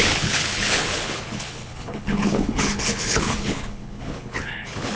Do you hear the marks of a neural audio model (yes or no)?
yes